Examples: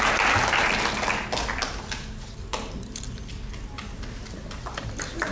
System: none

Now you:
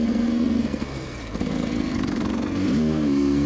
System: codec, SNAC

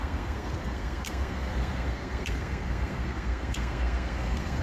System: codec, SNAC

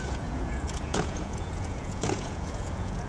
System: vocoder, Vocos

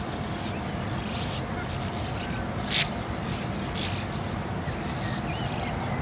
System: none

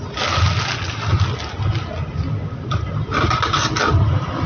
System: none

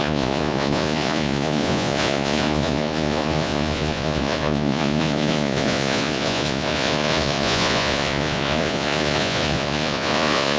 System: vocoder, Vocos